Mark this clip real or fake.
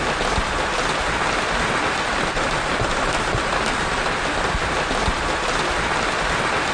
real